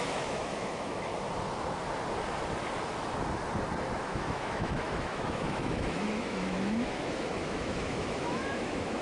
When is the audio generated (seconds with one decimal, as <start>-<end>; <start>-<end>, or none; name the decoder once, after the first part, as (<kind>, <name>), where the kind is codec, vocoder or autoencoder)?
0.0-1.1 (autoencoder, DAC-VAE); 4.0-9.0